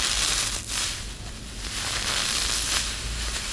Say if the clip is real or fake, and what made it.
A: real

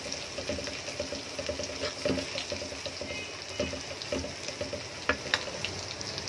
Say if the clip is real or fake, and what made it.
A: real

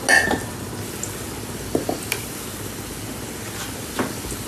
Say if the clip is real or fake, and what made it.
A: real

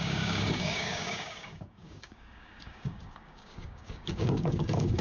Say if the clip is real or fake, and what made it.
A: fake, codec, DAC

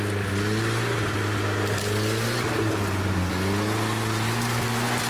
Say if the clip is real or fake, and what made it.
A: real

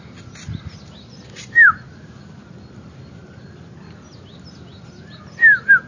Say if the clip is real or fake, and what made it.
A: real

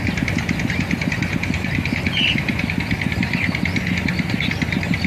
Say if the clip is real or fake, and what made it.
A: real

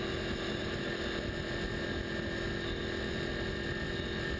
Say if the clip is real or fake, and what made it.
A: real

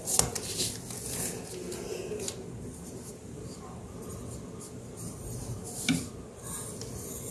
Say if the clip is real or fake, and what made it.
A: real